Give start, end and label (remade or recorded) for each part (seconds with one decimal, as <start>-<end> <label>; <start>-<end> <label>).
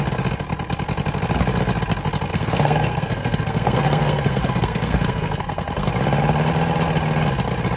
0.0-2.3 recorded; 2.3-5.9 remade; 5.9-7.8 recorded